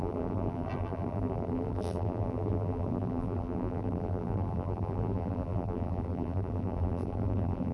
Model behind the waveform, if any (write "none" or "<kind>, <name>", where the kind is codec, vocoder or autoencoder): vocoder, BigVGAN v2